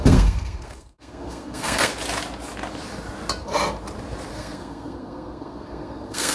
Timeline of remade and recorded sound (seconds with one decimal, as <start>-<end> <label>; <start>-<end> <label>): 0.0-1.9 remade; 1.9-4.3 recorded; 4.3-6.3 remade